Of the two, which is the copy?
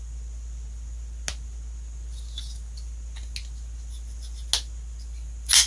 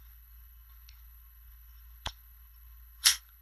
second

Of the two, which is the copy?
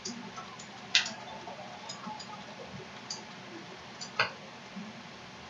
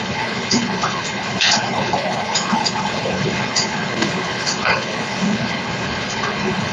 second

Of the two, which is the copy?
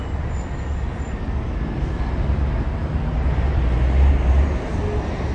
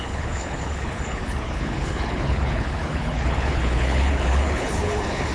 second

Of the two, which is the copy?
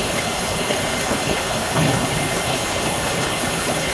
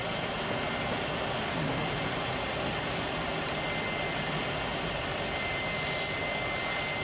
first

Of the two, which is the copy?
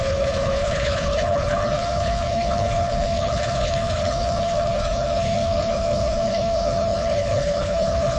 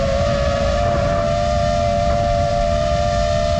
first